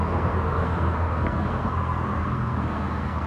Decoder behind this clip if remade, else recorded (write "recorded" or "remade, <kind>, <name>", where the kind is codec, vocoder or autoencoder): remade, codec, SNAC